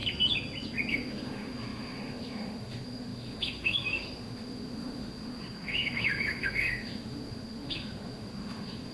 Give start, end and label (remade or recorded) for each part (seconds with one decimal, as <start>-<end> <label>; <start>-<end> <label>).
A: 0.0-0.9 recorded; 0.9-8.9 remade